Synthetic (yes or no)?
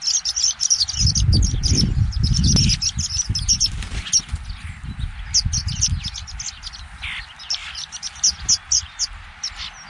no